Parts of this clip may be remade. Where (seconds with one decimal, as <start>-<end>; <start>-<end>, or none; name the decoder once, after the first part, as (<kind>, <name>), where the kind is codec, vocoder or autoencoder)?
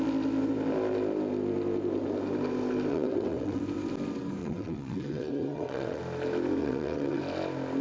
2.9-3.6 (vocoder, WaveNeXt); 4.4-6.0; 6.6-7.2